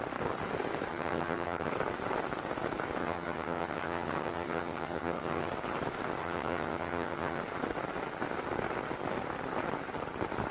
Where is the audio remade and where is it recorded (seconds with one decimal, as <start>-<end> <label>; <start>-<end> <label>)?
0.0-0.9 recorded; 0.9-1.7 remade; 1.7-3.0 recorded; 3.0-5.5 remade; 5.5-6.2 recorded; 6.2-7.4 remade; 7.4-10.5 recorded